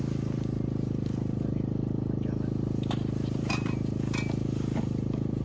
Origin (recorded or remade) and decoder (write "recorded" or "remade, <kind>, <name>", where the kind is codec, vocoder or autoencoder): remade, vocoder, BigVGAN v2